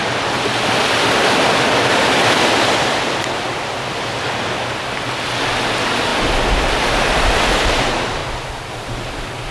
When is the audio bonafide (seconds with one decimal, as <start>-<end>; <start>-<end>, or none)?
0.0-9.5